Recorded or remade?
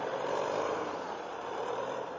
remade